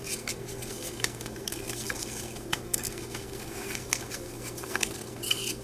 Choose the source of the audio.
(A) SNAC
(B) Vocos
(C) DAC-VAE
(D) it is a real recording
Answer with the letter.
A